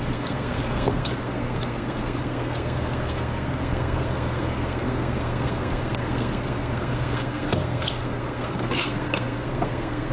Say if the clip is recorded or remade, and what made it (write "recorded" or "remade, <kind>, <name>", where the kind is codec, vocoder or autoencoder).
remade, codec, SNAC